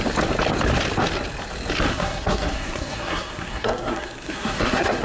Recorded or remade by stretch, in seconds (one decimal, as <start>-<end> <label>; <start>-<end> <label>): 0.0-1.9 recorded; 1.9-5.0 remade